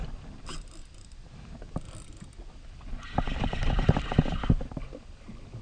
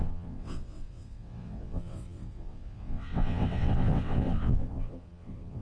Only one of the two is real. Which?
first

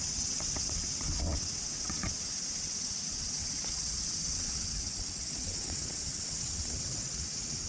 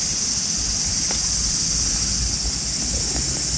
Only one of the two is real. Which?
second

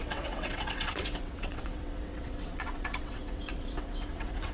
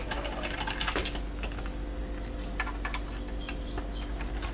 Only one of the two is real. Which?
second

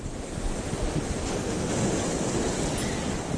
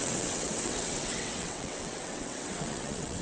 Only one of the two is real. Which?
first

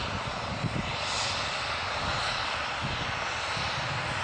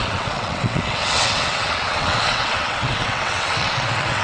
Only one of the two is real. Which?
first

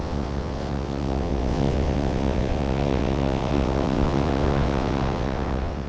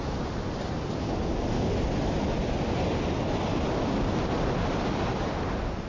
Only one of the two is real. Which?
second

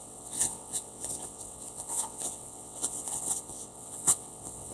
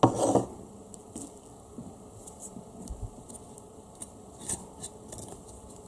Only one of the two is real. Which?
second